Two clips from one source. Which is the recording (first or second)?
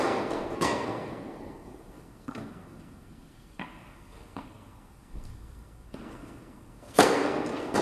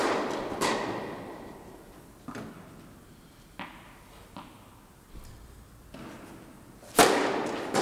second